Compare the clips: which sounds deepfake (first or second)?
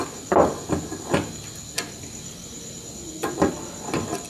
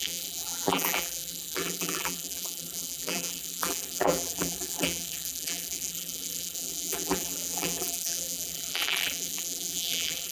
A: second